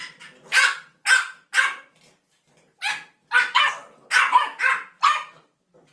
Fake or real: real